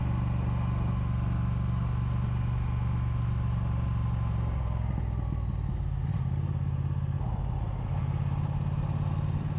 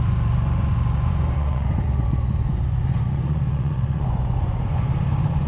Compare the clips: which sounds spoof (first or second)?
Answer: second